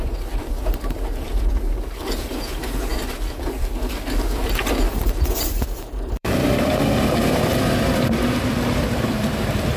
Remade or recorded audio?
remade